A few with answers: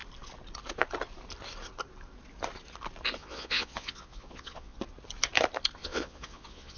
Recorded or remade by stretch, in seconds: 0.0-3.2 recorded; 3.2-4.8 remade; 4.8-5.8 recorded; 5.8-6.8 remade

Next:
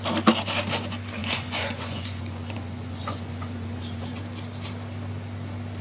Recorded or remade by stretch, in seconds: 0.0-1.2 recorded; 1.2-4.2 remade; 4.2-5.8 recorded